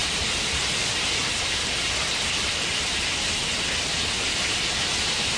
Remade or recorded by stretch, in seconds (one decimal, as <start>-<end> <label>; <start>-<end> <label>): 0.0-0.6 remade; 0.6-1.2 recorded; 1.2-4.0 remade; 4.0-5.4 recorded